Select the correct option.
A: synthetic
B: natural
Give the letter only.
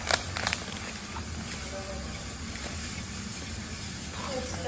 B